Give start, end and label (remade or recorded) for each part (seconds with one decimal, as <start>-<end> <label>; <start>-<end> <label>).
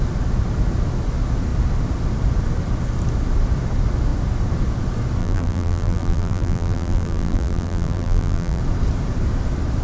0.0-5.2 recorded; 5.2-8.6 remade; 8.6-9.8 recorded